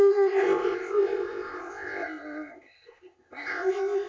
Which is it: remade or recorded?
remade